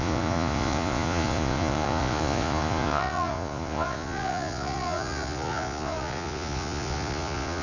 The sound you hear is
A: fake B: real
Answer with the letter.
A